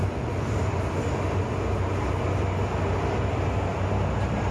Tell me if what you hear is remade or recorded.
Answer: recorded